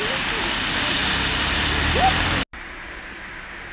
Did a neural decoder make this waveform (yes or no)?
no